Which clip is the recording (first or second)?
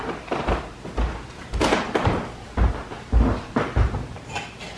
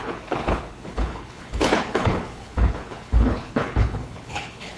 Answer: first